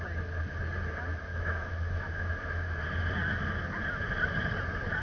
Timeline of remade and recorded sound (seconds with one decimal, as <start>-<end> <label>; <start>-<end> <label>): 0.0-1.3 recorded; 1.3-2.8 remade; 2.8-5.0 recorded